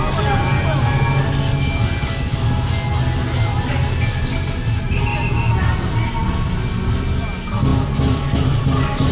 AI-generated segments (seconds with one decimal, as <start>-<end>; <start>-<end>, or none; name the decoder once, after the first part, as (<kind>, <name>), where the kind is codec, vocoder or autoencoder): none